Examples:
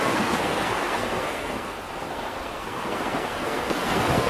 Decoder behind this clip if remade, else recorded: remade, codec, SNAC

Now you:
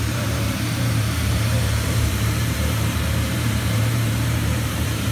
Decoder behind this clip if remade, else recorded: remade, vocoder, BigVGAN v2